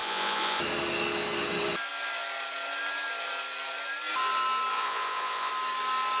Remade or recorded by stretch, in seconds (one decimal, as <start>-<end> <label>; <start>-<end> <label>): 0.0-0.6 remade; 0.6-4.7 recorded; 4.7-5.5 remade; 5.5-6.2 recorded